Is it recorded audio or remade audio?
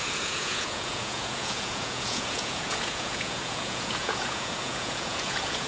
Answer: remade